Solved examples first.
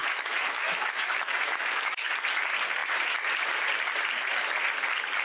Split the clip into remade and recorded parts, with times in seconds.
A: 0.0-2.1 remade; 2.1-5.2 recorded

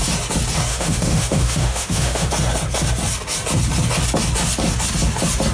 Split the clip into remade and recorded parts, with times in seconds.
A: 0.0-0.7 recorded; 0.7-2.3 remade; 2.3-5.5 recorded

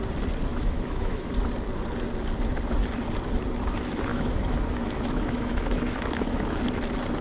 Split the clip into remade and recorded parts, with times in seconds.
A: 0.0-0.5 recorded; 0.5-1.3 remade; 1.3-4.1 recorded; 4.1-6.6 remade; 6.6-7.2 recorded

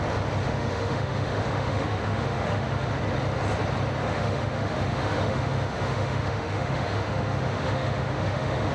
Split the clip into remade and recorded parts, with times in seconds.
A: 0.0-0.4 recorded; 0.4-2.9 remade; 2.9-4.0 recorded; 4.0-8.7 remade